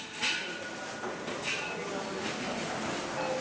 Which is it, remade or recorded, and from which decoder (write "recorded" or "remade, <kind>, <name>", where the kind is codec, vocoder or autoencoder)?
recorded